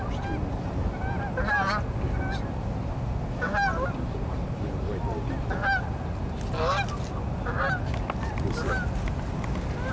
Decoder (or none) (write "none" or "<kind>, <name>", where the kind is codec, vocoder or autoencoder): none